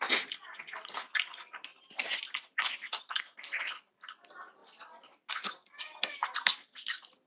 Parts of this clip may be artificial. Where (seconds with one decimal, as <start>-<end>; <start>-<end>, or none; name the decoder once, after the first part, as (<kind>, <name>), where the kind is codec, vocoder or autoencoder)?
1.7-2.6 (vocoder, BigVGAN v2)